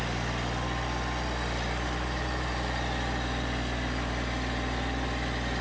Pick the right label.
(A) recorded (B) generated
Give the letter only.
A